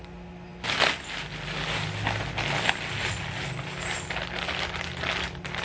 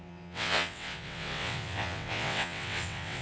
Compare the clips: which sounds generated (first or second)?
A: second